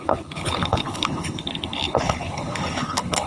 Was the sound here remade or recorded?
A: remade